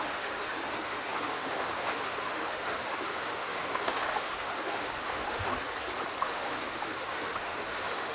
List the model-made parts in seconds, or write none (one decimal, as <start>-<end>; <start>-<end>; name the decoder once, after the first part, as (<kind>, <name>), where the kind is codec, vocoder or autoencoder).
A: 0.0-5.5 (autoencoder, DAC-VAE); 6.2-8.1